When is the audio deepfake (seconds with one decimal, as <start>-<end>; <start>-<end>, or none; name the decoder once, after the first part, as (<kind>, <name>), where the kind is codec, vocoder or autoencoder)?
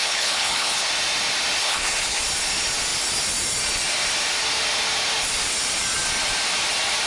0.0-0.9 (codec, HILCodec); 1.6-2.2